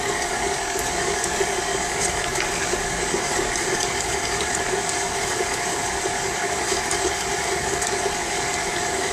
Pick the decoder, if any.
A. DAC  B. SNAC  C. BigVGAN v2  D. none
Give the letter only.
A